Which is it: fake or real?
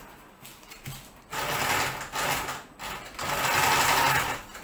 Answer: real